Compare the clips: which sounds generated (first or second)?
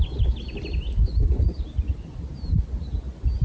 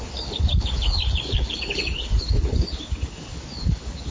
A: second